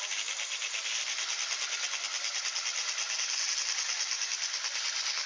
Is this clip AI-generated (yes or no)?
no